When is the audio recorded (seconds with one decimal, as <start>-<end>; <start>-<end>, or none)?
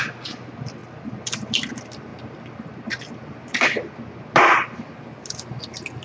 0.0-6.0